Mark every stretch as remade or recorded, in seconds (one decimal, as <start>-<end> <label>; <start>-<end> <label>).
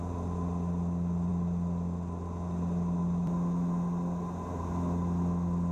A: 0.0-5.7 recorded